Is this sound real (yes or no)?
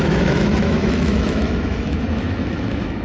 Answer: no